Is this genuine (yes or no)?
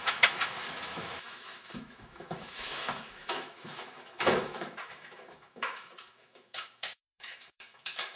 no